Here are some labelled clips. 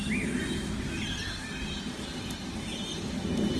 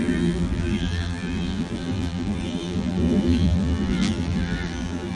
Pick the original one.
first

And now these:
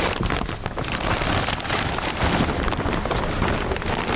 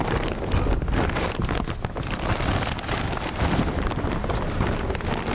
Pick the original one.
second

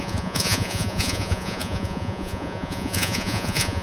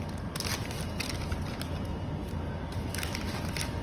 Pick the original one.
second